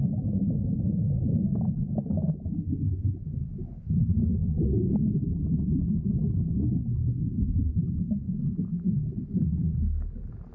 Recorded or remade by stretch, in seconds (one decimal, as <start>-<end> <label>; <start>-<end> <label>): 0.0-4.4 recorded; 4.4-5.0 remade; 5.0-10.5 recorded